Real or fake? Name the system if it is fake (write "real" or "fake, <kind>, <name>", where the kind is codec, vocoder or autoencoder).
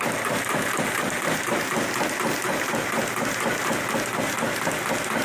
real